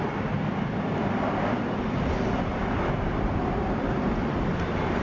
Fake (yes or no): no